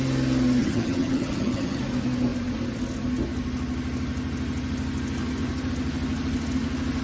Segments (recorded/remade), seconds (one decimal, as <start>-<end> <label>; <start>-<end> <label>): 0.0-0.6 recorded; 0.6-1.8 remade; 1.8-7.0 recorded